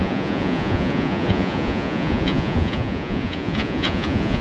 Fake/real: fake